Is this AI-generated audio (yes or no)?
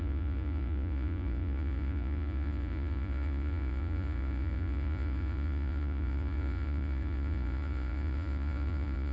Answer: yes